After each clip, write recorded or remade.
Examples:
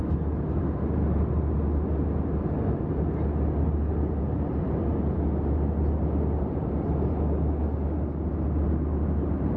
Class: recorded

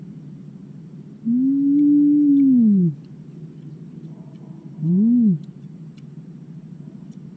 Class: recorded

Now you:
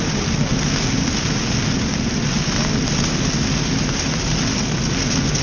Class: recorded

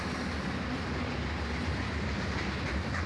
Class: recorded